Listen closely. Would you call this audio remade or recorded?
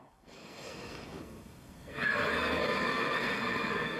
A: remade